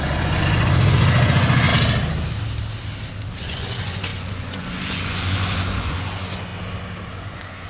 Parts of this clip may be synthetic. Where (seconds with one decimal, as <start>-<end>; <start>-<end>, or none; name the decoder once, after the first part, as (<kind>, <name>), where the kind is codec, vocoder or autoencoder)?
0.0-1.7 (vocoder, Vocos); 3.4-6.5; 7.1-7.7